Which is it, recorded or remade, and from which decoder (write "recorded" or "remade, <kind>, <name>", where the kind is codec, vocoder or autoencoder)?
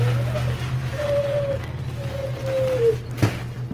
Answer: recorded